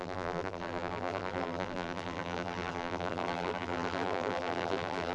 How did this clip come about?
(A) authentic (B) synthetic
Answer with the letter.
B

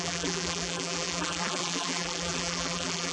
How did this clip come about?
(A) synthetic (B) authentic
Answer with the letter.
A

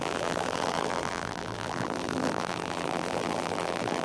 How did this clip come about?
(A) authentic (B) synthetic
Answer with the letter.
B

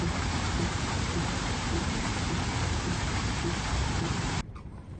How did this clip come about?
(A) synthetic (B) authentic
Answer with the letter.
A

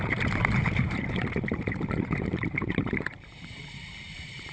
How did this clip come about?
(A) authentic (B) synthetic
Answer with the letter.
B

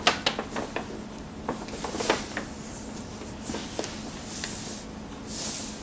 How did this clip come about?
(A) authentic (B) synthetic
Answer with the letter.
A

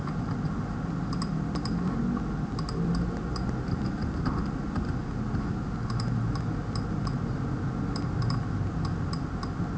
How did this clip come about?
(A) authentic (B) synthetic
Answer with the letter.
A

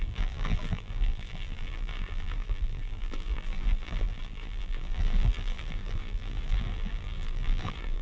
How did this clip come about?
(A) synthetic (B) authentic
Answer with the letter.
A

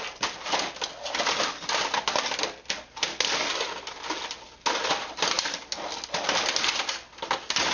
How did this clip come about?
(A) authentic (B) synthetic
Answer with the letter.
A